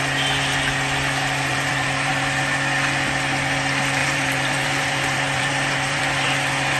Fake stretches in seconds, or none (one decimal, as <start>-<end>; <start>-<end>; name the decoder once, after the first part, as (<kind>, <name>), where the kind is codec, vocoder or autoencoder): 1.5-2.1 (vocoder, BigVGAN v2); 4.0-6.0